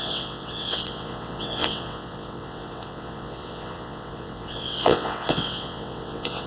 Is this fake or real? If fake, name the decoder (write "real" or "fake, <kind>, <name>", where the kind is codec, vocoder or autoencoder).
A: fake, vocoder, WaveNeXt